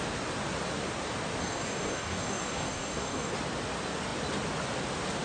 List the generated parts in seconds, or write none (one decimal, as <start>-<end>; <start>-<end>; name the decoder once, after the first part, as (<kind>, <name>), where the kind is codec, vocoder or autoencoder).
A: 1.4-3.3 (codec, DAC)